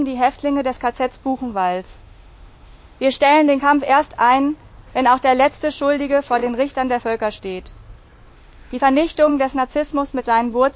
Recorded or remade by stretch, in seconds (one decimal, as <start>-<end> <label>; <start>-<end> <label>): 0.0-1.2 recorded; 1.2-3.6 remade; 3.6-8.3 recorded; 8.3-8.8 remade; 8.8-9.3 recorded; 9.3-10.2 remade; 10.2-10.8 recorded